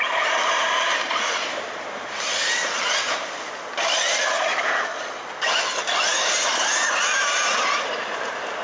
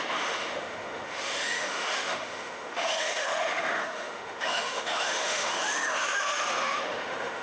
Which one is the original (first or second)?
first